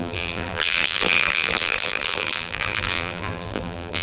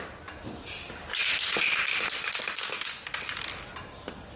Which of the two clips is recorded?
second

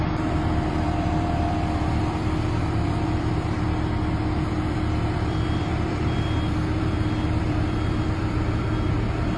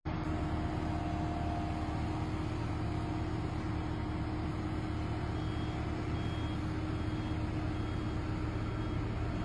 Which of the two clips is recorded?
second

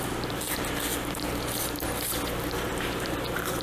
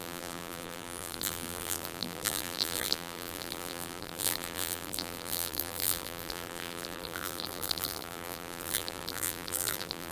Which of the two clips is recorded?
first